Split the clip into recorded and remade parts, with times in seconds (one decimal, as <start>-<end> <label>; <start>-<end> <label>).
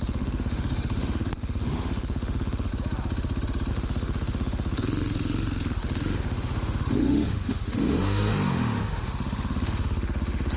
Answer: 0.0-2.7 remade; 2.7-3.7 recorded; 3.7-10.6 remade